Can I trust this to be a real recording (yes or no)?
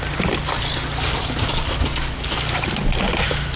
yes